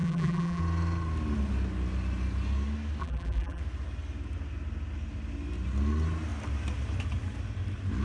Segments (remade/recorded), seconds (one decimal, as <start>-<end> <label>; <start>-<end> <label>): 0.0-0.6 remade; 0.6-3.0 recorded; 3.0-3.6 remade; 3.6-8.0 recorded